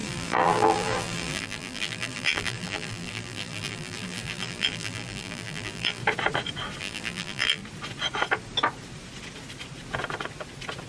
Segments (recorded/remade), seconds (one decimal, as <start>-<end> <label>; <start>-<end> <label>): 0.0-6.0 remade; 6.0-6.8 recorded; 6.8-7.6 remade; 7.6-10.9 recorded

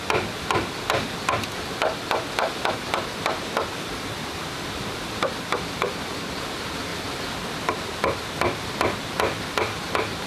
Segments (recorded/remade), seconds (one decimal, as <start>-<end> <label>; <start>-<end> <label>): 0.0-6.9 remade; 6.9-7.7 recorded; 7.7-10.3 remade

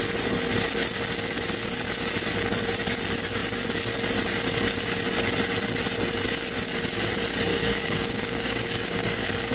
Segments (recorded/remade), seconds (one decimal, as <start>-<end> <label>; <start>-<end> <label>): 0.0-7.5 recorded; 7.5-9.5 remade

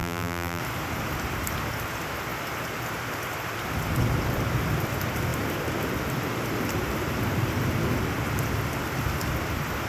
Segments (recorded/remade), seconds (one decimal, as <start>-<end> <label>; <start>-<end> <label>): 0.0-0.6 remade; 0.6-9.9 recorded

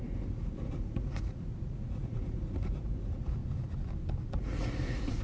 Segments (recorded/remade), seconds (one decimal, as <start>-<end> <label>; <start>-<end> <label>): 0.0-3.4 remade; 3.4-4.3 recorded; 4.3-5.2 remade

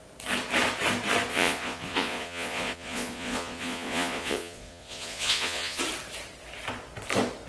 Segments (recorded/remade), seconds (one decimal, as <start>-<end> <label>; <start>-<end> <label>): 0.0-1.3 recorded; 1.3-5.8 remade; 5.8-7.5 recorded

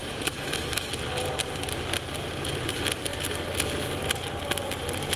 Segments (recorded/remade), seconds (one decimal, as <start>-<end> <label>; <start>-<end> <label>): 0.0-0.9 remade; 0.9-5.2 recorded